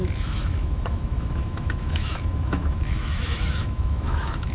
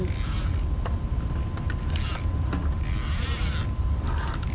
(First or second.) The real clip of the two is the second